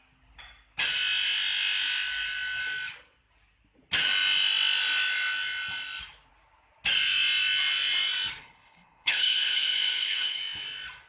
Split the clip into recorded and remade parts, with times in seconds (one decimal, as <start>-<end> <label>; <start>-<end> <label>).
0.0-8.4 recorded; 8.4-10.4 remade; 10.4-11.1 recorded